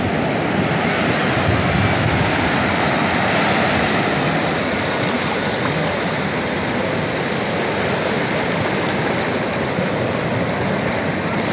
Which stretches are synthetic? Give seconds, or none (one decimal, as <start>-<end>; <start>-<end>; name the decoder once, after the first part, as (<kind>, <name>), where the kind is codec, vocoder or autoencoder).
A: none